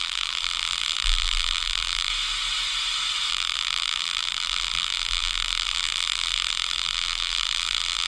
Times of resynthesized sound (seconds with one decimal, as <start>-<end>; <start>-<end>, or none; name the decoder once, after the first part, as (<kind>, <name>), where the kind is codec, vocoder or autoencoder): 0.0-2.1 (vocoder, BigVGAN v2); 3.3-8.1